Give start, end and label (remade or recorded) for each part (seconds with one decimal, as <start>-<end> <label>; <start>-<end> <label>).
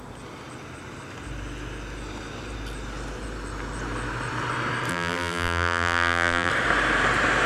0.0-4.9 recorded; 4.9-6.5 remade; 6.5-7.5 recorded